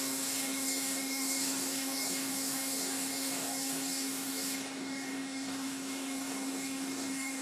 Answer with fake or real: fake